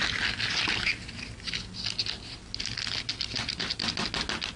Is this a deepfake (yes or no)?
no